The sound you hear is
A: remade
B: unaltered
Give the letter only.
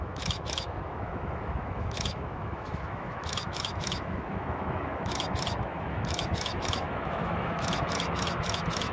A